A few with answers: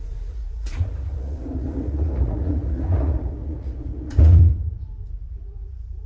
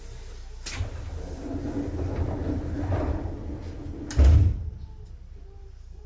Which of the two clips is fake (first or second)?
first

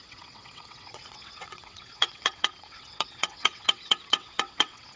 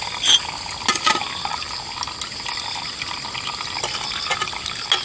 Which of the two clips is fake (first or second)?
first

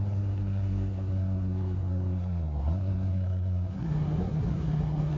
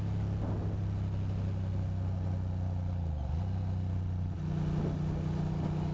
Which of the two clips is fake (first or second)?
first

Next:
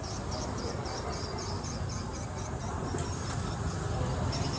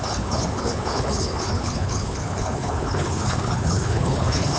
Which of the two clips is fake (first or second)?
second